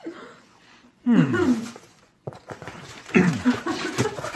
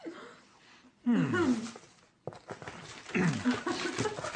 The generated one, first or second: first